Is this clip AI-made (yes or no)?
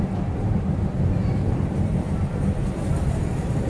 yes